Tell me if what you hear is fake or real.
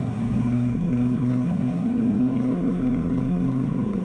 fake